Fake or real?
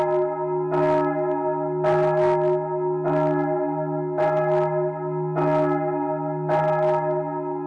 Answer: real